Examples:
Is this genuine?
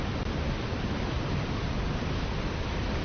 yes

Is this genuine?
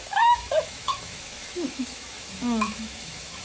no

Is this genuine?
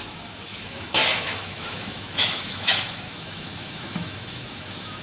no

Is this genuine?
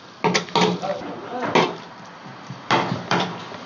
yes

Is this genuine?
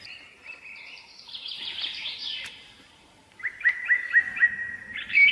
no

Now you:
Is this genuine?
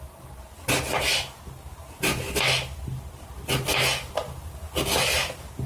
yes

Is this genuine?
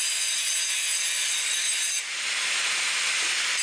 yes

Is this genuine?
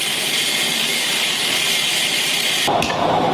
no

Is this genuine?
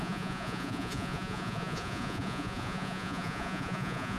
no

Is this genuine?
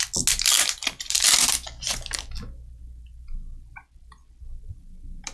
yes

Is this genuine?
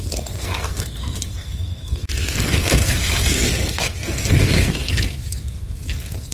no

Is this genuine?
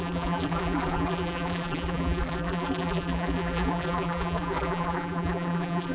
no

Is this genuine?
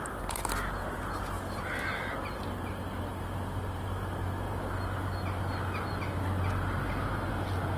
yes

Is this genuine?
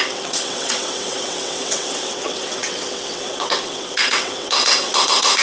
no